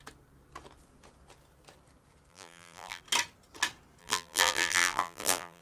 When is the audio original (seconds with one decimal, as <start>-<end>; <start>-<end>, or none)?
0.0-2.3; 3.0-4.0